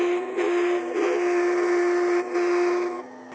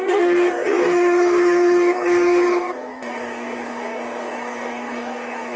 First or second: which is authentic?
first